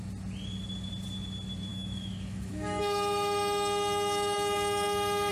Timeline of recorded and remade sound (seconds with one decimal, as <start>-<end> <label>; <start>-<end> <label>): 0.0-1.7 recorded; 1.7-5.3 remade